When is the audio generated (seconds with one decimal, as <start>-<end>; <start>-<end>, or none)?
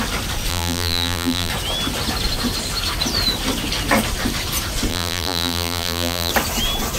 0.5-1.5; 4.9-6.3